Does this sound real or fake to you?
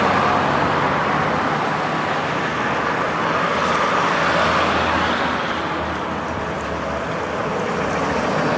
real